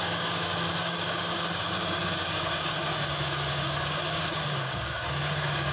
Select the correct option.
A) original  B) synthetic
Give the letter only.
B